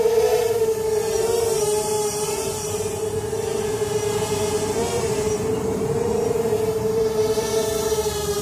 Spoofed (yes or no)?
yes